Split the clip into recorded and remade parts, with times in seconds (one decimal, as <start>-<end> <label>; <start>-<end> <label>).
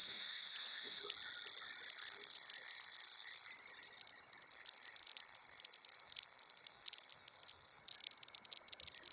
0.0-1.0 remade; 1.0-1.9 recorded; 1.9-3.5 remade; 3.5-4.5 recorded; 4.5-7.8 remade; 7.8-9.1 recorded